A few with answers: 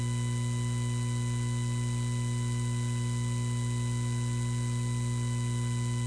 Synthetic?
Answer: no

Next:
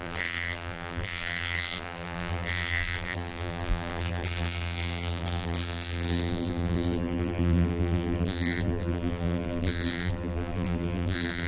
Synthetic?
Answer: yes